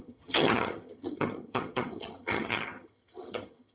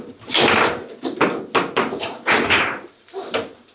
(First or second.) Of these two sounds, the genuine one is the second